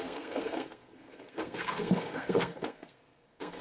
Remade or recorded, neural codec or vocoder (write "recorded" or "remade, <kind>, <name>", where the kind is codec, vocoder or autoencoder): remade, codec, SNAC